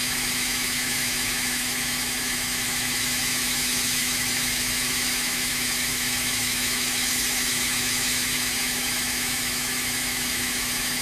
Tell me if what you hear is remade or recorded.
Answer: remade